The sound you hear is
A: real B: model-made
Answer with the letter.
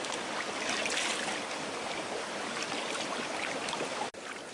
A